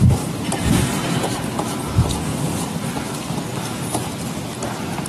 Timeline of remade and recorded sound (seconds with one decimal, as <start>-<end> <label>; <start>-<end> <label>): 0.0-2.3 remade; 2.3-3.2 recorded; 3.2-3.9 remade; 3.9-5.1 recorded